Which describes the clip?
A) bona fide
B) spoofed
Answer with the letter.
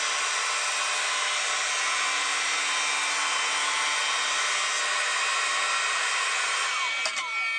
A